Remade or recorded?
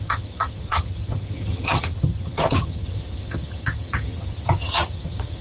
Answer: remade